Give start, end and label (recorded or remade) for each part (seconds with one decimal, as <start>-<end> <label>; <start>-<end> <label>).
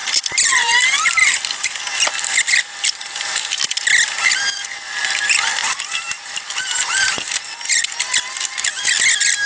0.0-1.2 recorded; 1.2-1.8 remade; 1.8-5.6 recorded; 5.6-6.4 remade; 6.4-9.5 recorded